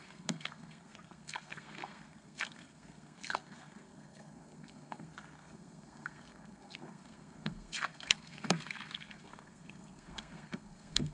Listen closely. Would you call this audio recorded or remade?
remade